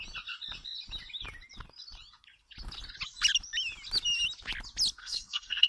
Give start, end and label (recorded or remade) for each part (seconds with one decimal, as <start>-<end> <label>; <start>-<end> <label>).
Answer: 0.0-5.0 recorded; 5.0-5.7 remade